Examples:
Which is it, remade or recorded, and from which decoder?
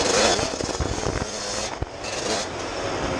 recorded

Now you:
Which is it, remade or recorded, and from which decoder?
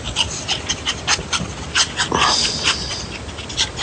recorded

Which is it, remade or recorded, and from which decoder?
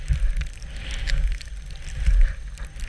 recorded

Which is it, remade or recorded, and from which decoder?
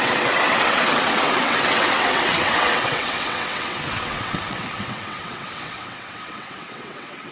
remade, vocoder, WaveNeXt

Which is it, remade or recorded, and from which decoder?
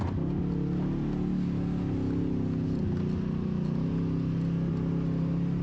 recorded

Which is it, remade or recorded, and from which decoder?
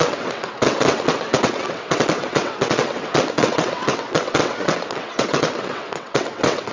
remade, vocoder, WaveNeXt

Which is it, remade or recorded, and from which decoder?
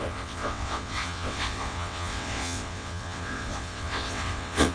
remade, vocoder, WaveNeXt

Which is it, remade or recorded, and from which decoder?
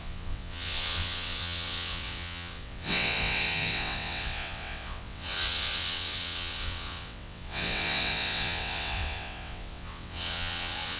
remade, vocoder, WaveNeXt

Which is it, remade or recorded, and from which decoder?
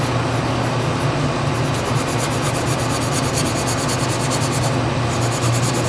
recorded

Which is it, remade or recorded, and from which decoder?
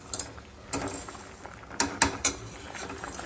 recorded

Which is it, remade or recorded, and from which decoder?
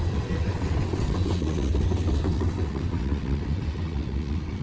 remade, vocoder, WaveNeXt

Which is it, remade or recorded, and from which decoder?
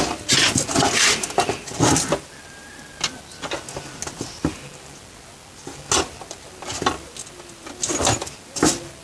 recorded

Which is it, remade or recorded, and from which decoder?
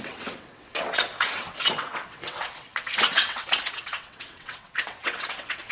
remade, vocoder, WaveNeXt